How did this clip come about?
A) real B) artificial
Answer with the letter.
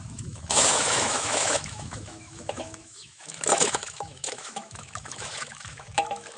B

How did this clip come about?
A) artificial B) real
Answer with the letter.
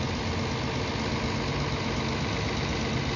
B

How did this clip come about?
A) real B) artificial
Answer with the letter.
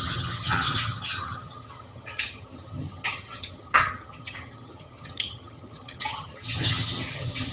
B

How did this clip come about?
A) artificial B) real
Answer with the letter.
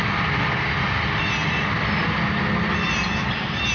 B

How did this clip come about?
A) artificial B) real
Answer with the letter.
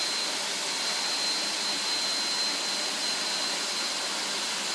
B